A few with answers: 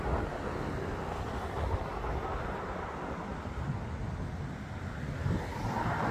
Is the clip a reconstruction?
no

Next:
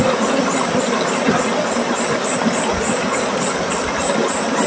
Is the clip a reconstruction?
no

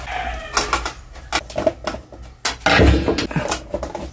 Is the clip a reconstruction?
no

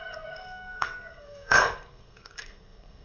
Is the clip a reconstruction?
yes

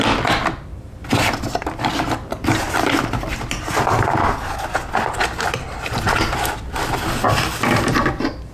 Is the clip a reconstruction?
no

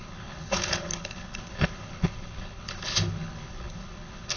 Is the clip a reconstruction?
yes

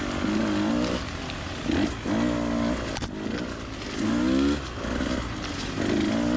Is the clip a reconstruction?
no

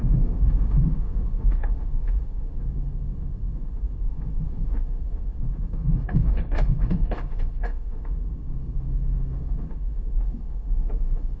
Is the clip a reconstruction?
yes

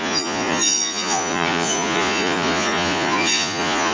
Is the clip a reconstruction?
yes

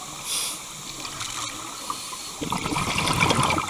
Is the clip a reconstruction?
no